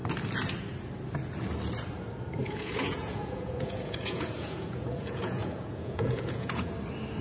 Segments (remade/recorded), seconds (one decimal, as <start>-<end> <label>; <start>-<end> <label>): 0.0-2.4 recorded; 2.4-6.7 remade; 6.7-7.2 recorded